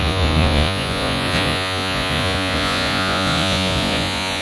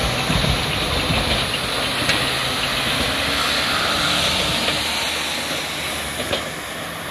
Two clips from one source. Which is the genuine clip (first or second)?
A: second